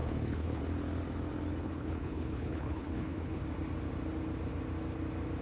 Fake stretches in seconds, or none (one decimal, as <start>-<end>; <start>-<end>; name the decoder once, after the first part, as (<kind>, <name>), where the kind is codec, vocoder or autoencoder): 0.0-0.6 (codec, HILCodec); 1.6-3.4